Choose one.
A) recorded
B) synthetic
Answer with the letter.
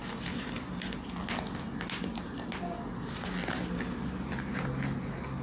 A